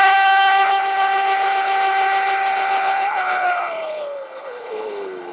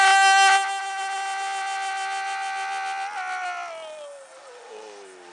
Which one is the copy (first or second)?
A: first